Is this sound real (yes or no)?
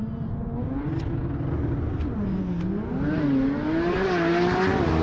yes